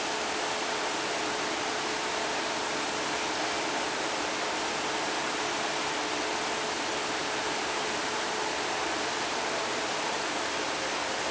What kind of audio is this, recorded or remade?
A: recorded